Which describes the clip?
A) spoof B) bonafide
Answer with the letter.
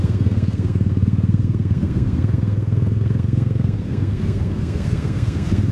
A